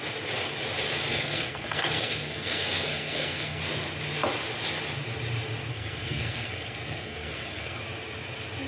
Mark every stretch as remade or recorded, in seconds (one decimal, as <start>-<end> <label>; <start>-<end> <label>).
0.0-1.1 recorded; 1.1-3.6 remade; 3.6-5.7 recorded; 5.7-7.8 remade; 7.8-8.7 recorded